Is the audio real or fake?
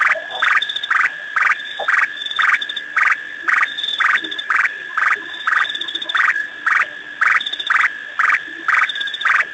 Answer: fake